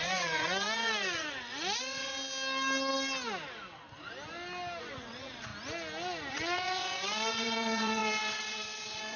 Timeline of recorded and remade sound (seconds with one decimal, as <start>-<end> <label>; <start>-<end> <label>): 0.0-2.1 remade; 2.1-4.8 recorded; 4.8-5.5 remade; 5.5-6.3 recorded; 6.3-9.2 remade